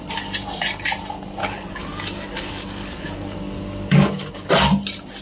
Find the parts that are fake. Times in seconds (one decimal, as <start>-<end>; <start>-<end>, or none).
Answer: 1.4-4.5